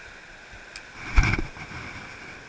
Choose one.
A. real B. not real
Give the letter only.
A